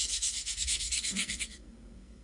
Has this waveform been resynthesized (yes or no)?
yes